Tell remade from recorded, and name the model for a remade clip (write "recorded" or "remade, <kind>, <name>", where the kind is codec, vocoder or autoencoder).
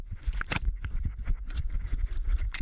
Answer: remade, vocoder, Vocos